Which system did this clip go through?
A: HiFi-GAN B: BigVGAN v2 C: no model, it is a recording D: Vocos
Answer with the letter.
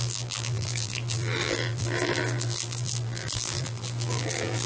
B